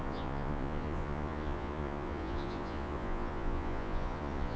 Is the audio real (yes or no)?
no